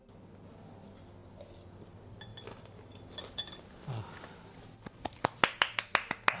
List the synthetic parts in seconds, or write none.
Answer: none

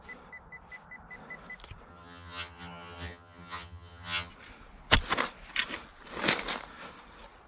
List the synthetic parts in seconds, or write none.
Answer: 1.9-4.3 (vocoder, HiFi-GAN)

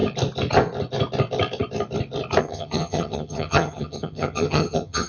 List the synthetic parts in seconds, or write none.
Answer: 2.4-5.1 (vocoder, HiFi-GAN)

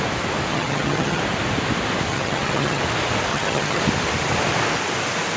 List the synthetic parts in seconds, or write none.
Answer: 0.5-1.2 (vocoder, HiFi-GAN); 2.1-2.8; 3.3-3.8